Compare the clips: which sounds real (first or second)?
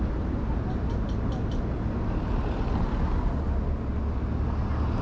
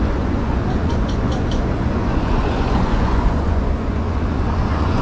first